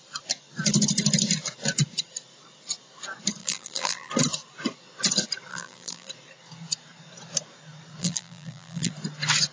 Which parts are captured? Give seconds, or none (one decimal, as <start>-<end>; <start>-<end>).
0.0-3.4; 4.1-5.5; 6.1-8.0; 8.9-9.5